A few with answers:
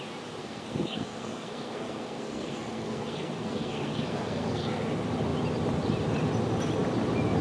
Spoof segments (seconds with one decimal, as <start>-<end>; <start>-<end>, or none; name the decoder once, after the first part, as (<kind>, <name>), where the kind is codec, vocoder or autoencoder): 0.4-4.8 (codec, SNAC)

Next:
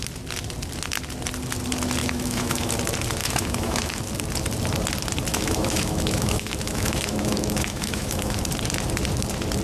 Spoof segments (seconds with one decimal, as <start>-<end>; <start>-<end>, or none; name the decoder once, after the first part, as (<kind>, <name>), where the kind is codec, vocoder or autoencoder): 2.0-2.7 (autoencoder, DAC-VAE); 3.2-4.0; 5.3-8.4

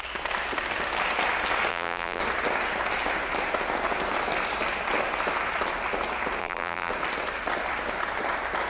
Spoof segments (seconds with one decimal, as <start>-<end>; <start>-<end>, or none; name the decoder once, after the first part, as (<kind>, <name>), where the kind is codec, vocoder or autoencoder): 1.7-2.2 (vocoder, BigVGAN v2); 6.4-6.9

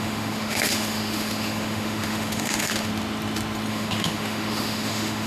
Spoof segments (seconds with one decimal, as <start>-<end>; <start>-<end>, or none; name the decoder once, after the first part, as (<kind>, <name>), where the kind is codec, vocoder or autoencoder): 0.0-2.9 (autoencoder, DAC-VAE); 3.7-5.3

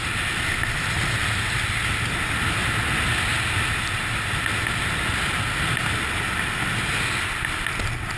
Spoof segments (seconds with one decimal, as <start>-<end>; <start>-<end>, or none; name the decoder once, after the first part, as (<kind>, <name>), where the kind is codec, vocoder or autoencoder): none

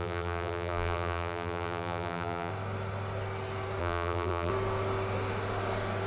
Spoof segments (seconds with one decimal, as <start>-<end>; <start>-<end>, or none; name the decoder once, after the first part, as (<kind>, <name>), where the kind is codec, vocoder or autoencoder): 0.0-2.5 (vocoder, BigVGAN v2); 3.8-4.5

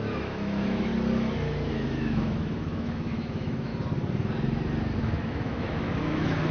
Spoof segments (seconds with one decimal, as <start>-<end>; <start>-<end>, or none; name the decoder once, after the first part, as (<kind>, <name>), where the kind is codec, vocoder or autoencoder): 0.0-0.9 (autoencoder, DAC-VAE); 1.7-3.7; 5.0-6.5